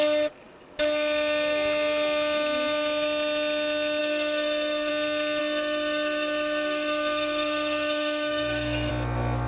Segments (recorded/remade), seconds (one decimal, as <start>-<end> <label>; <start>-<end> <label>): 0.0-4.0 recorded; 4.0-4.9 remade; 4.9-5.4 recorded; 5.4-8.9 remade; 8.9-9.5 recorded